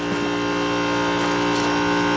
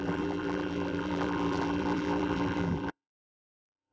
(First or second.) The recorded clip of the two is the first